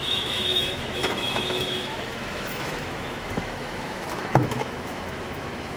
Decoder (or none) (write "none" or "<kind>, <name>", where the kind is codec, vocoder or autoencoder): autoencoder, DAC-VAE